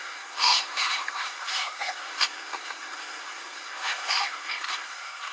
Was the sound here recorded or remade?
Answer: remade